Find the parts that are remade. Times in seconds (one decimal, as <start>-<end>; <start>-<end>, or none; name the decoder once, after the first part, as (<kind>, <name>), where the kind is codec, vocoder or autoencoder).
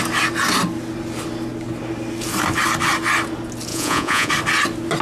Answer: 3.7-4.3 (vocoder, Vocos)